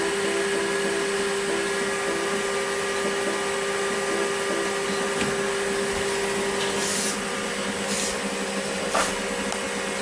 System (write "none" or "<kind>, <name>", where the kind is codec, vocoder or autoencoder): none